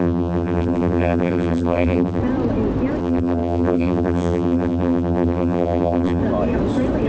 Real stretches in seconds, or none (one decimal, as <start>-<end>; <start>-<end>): 2.2-3.0; 6.2-7.1